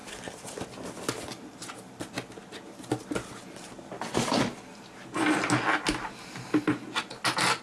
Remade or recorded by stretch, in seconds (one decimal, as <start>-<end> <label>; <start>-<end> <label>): 0.0-7.6 recorded